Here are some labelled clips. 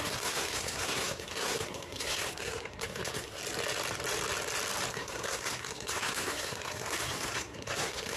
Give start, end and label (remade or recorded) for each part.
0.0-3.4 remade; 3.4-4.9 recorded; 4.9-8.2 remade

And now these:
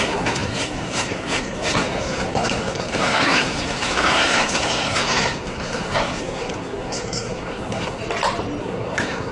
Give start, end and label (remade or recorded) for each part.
0.0-8.0 remade; 8.0-8.6 recorded; 8.6-9.3 remade

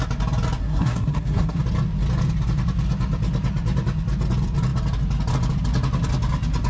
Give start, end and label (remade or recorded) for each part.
0.0-0.6 recorded; 0.6-1.6 remade; 1.6-6.7 recorded

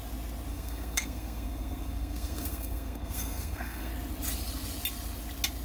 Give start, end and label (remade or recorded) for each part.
0.0-0.5 recorded; 0.5-3.9 remade; 3.9-5.6 recorded

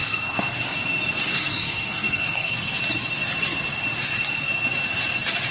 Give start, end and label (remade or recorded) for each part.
0.0-0.6 remade; 0.6-1.3 recorded; 1.3-2.8 remade; 2.8-5.5 recorded